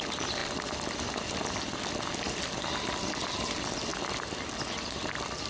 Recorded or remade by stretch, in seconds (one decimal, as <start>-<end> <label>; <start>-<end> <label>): 0.0-5.5 remade